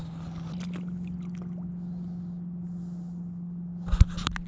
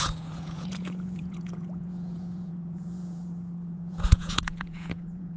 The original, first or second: first